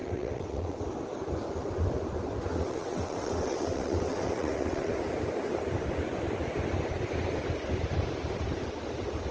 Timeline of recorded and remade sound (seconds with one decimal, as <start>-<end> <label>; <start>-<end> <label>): 0.0-0.8 remade; 0.8-2.5 recorded; 2.5-4.9 remade; 4.9-9.3 recorded